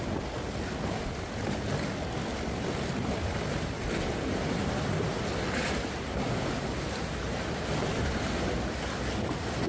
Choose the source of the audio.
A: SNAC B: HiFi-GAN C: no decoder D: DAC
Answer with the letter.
C